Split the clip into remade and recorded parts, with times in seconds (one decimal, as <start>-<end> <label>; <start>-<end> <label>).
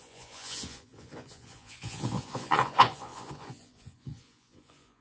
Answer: 0.0-5.0 remade